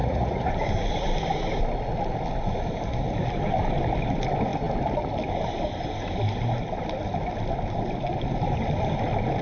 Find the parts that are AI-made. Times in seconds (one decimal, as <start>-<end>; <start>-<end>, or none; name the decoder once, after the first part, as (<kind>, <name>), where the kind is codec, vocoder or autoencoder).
0.0-0.5 (vocoder, Vocos)